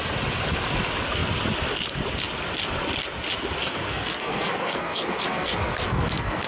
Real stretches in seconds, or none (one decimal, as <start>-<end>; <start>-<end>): 0.0-3.6